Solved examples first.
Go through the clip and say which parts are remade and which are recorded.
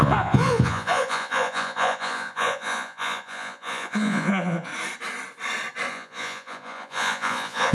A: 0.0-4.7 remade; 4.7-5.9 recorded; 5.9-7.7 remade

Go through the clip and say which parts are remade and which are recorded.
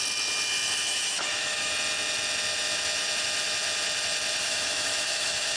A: 0.0-0.9 recorded; 0.9-1.7 remade; 1.7-4.4 recorded; 4.4-5.6 remade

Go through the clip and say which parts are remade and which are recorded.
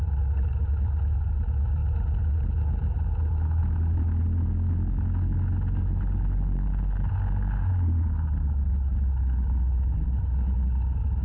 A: 0.0-11.2 recorded